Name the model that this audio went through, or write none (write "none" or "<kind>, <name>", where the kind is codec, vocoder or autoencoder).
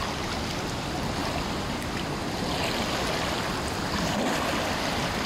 none